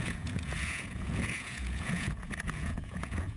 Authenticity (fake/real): fake